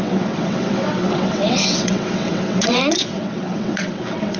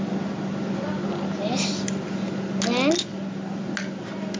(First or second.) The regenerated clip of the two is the first